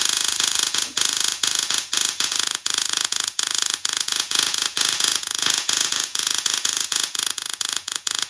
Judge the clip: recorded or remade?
remade